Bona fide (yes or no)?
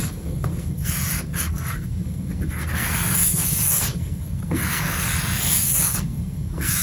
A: no